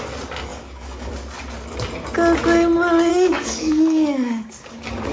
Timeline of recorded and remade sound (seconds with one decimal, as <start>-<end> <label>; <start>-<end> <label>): 0.0-0.5 recorded; 0.5-1.1 remade; 1.1-3.1 recorded; 3.1-5.1 remade